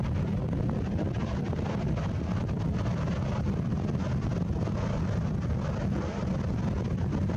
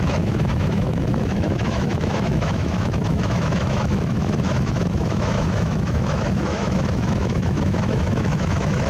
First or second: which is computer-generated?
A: second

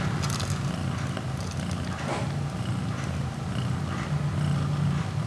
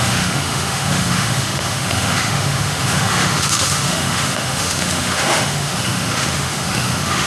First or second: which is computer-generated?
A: second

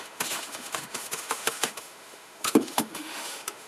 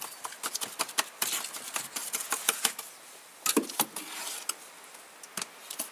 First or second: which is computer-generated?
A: first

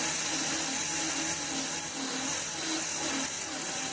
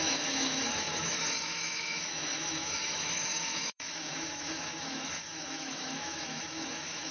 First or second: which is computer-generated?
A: second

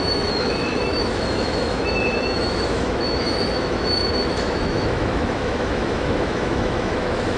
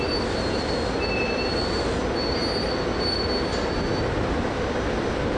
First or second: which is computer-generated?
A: first